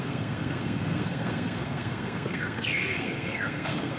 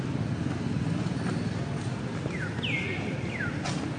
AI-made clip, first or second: first